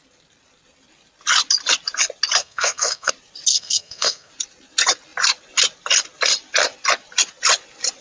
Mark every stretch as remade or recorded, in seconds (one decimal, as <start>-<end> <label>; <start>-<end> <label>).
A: 0.0-2.4 recorded; 2.4-3.1 remade; 3.1-3.5 recorded; 3.5-4.3 remade; 4.3-8.0 recorded